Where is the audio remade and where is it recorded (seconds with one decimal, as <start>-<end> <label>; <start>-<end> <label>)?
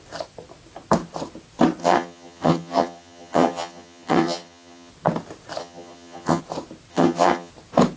0.0-1.8 recorded; 1.8-4.9 remade; 4.9-5.6 recorded; 5.6-6.4 remade; 6.4-6.9 recorded; 6.9-7.5 remade; 7.5-8.0 recorded